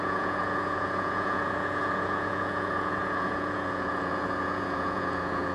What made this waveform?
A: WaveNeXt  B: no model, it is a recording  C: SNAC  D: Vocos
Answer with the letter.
D